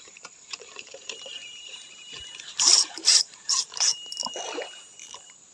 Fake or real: fake